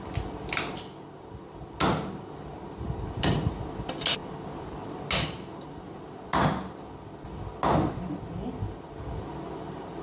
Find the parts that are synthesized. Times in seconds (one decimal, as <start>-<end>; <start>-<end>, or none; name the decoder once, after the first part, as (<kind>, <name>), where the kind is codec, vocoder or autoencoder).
none